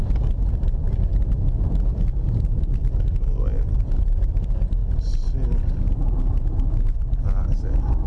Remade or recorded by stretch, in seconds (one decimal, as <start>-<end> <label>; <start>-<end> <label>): 0.0-2.8 remade; 2.8-3.3 recorded; 3.3-4.8 remade; 4.8-6.7 recorded; 6.7-8.1 remade